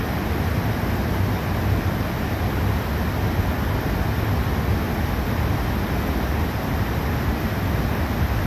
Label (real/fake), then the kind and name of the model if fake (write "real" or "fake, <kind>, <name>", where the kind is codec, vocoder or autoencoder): real